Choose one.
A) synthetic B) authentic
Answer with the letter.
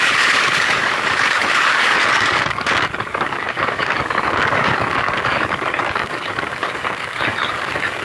A